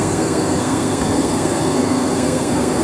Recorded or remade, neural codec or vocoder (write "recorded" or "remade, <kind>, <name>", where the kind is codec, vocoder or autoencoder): remade, codec, SNAC